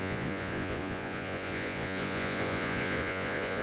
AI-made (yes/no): yes